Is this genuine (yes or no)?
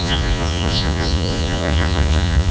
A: no